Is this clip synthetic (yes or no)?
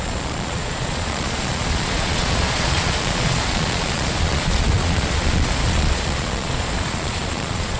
yes